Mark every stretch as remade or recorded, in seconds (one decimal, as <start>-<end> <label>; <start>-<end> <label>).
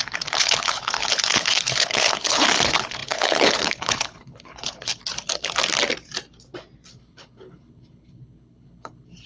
0.0-5.0 remade; 5.0-6.9 recorded; 6.9-9.3 remade